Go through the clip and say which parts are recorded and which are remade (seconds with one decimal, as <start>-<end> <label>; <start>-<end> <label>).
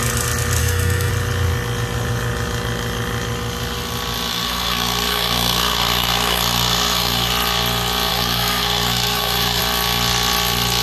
0.0-0.6 recorded; 0.6-1.1 remade; 1.1-4.3 recorded; 4.3-7.3 remade; 7.3-8.1 recorded; 8.1-9.6 remade; 9.6-10.8 recorded